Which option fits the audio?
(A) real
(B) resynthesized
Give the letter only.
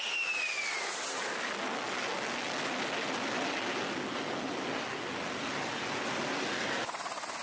A